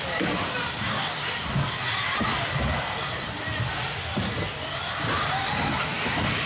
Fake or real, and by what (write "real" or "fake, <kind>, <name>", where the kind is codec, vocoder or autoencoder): real